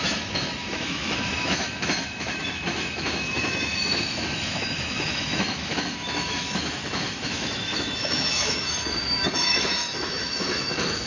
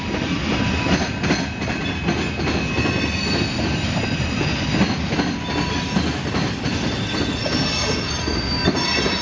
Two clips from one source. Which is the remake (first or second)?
first